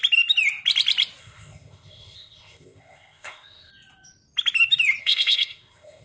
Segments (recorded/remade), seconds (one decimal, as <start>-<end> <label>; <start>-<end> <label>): 0.0-1.2 recorded; 1.2-3.7 remade; 3.7-5.0 recorded; 5.0-6.0 remade